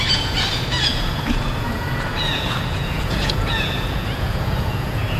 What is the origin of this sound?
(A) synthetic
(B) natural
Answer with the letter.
A